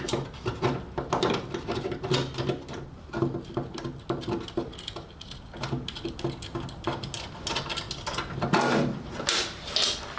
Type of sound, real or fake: real